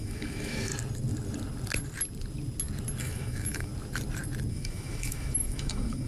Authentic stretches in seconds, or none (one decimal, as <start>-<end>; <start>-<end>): 0.7-3.0; 3.7-4.5